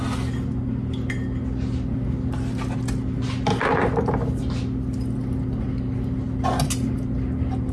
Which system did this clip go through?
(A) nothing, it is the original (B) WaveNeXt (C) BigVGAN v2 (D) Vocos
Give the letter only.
A